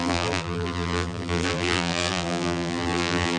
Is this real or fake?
fake